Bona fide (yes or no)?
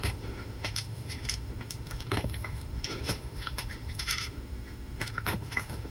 no